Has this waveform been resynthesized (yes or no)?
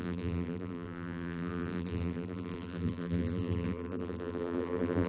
yes